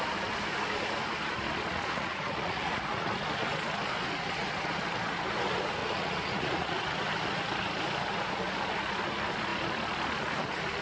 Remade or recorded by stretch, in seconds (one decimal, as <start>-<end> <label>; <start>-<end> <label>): 0.0-1.7 recorded; 1.7-3.1 remade; 3.1-5.8 recorded; 5.8-6.8 remade; 6.8-10.8 recorded